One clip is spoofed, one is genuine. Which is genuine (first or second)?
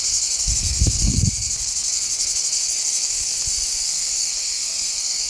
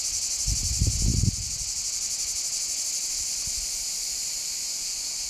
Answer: second